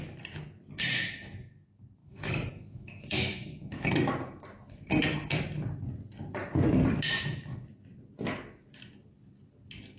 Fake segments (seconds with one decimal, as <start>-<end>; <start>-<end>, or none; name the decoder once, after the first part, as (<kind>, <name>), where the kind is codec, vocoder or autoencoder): 2.0-3.9 (autoencoder, DAC-VAE)